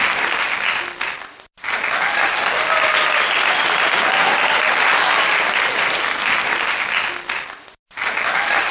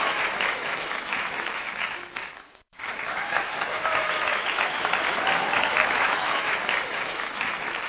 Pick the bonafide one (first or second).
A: first